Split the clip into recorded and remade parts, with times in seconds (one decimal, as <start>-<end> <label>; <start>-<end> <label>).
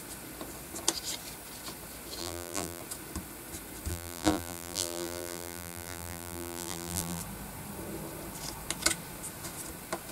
0.0-2.2 recorded; 2.2-2.8 remade; 2.8-3.9 recorded; 3.9-7.2 remade; 7.2-10.1 recorded